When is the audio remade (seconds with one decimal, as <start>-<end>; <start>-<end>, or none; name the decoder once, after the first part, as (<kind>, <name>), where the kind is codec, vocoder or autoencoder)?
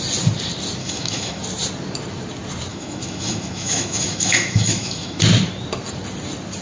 0.8-1.4 (autoencoder, DAC-VAE); 2.7-5.2